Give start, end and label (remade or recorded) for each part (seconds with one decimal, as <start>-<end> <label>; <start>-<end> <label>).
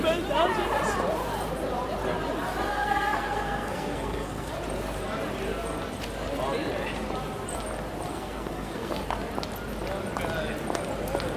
0.0-2.7 recorded; 2.7-4.5 remade; 4.5-8.1 recorded; 8.1-8.9 remade; 8.9-11.4 recorded